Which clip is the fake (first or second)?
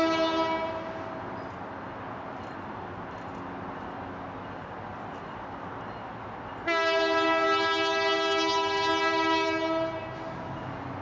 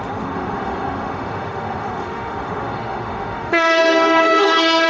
second